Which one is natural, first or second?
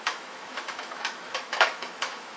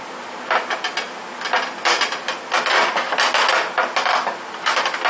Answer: second